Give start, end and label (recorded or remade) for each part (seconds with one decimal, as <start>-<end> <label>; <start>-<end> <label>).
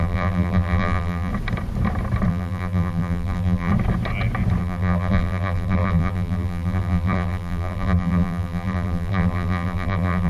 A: 0.0-1.3 remade; 1.3-2.3 recorded; 2.3-3.7 remade; 3.7-4.6 recorded; 4.6-10.3 remade